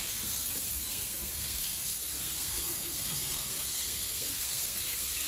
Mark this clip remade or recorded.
remade